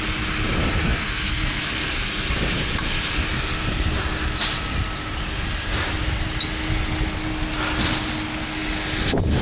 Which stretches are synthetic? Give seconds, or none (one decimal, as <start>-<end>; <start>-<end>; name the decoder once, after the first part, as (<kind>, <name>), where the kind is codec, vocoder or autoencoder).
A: 0.8-1.7 (codec, SNAC)